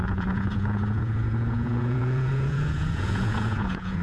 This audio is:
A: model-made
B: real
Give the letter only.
A